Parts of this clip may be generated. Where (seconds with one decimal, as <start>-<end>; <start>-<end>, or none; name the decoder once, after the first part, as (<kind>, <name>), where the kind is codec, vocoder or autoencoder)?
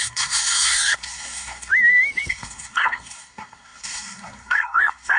0.0-1.7 (codec, SNAC); 2.3-5.2